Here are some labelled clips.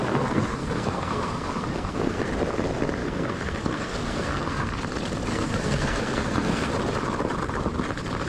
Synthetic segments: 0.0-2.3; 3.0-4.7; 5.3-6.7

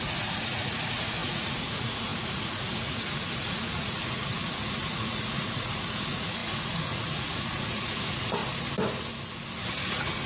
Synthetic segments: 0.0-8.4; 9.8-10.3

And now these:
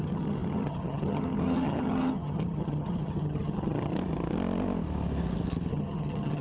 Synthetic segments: 0.0-3.9; 5.7-6.4

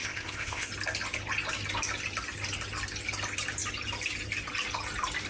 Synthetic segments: 0.0-0.7